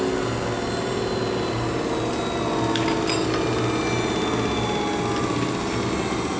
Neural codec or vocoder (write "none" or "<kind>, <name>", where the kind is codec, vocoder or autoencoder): none